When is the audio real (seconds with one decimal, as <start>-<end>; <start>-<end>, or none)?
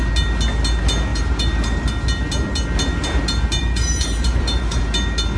0.0-1.1; 1.9-3.6; 4.8-5.4